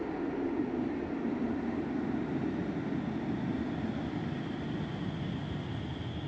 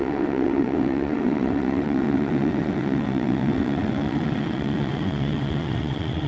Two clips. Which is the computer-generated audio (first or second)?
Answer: second